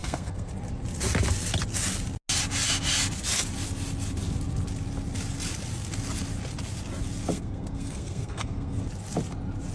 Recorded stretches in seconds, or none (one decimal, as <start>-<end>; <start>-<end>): 0.5-7.3; 8.8-9.7